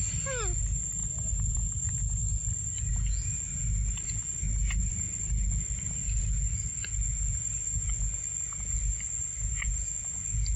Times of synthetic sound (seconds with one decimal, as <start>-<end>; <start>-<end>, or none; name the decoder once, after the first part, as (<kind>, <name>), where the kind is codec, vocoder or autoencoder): 1.0-1.7 (vocoder, BigVGAN v2)